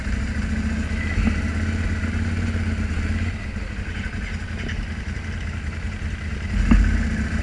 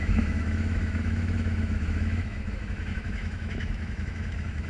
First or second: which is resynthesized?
second